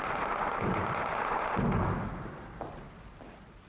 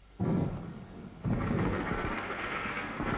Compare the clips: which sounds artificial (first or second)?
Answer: second